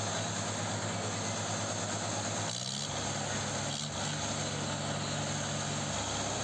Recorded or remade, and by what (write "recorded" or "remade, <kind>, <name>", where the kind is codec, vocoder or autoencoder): recorded